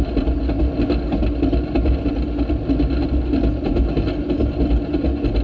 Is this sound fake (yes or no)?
no